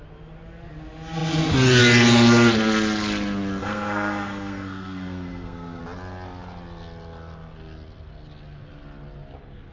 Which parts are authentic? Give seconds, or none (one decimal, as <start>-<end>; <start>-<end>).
0.0-3.6; 5.8-9.7